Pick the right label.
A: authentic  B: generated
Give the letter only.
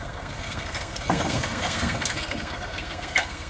B